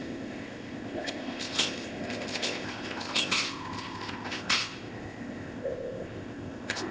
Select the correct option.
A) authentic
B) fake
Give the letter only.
B